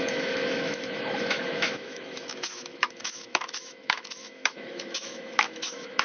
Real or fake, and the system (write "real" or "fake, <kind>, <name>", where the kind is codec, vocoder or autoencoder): fake, autoencoder, DAC-VAE